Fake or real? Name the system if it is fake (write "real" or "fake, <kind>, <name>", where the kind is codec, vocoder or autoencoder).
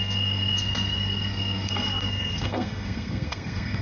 fake, codec, SNAC